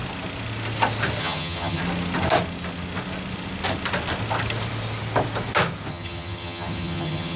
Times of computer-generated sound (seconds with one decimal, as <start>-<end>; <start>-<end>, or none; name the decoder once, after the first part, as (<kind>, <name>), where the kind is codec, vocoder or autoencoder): 1.2-1.8 (vocoder, HiFi-GAN); 5.9-7.4